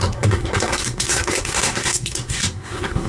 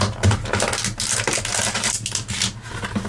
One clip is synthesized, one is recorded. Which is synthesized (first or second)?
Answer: first